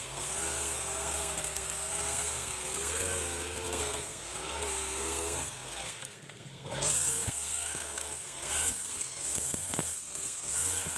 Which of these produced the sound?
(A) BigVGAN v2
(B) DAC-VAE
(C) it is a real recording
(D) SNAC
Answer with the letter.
D